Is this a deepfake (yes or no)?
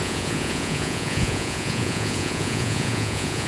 yes